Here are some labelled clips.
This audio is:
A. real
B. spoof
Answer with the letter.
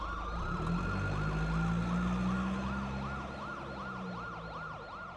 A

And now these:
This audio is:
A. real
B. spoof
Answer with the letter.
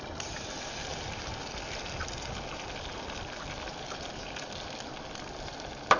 A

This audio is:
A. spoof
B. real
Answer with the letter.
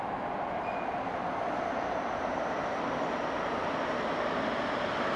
B